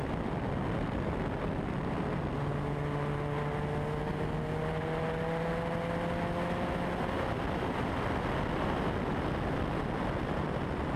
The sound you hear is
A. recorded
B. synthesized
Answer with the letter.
A